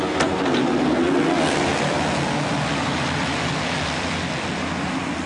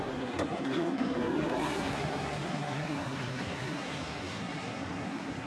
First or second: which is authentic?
first